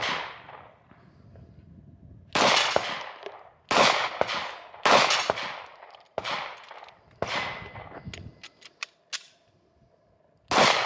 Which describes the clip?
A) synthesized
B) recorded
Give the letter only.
B